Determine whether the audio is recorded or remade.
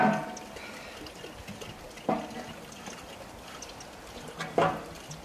recorded